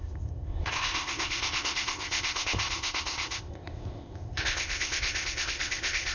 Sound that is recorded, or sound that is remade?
remade